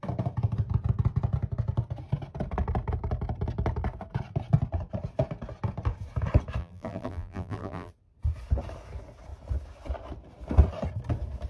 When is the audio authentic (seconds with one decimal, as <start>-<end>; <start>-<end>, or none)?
0.0-6.6; 7.9-11.5